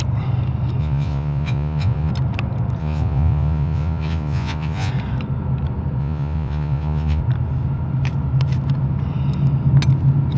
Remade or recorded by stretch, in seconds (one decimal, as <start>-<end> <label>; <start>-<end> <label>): 0.0-0.8 recorded; 0.8-2.1 remade; 2.1-2.8 recorded; 2.8-4.9 remade; 4.9-6.0 recorded; 6.0-7.2 remade; 7.2-10.4 recorded